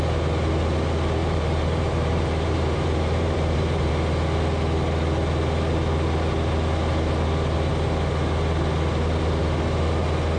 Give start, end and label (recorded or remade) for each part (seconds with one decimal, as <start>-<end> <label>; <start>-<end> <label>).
0.0-1.2 recorded; 1.2-3.9 remade; 3.9-10.4 recorded